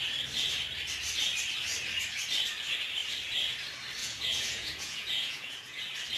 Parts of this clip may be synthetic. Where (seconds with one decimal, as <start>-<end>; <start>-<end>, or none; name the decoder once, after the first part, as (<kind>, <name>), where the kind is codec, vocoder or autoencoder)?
4.0-5.8 (vocoder, Vocos)